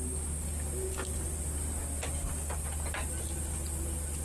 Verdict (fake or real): real